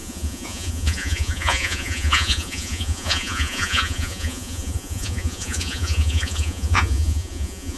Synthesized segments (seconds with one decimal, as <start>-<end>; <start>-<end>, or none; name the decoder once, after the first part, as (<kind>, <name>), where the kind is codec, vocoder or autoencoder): 0.0-7.8 (vocoder, Vocos)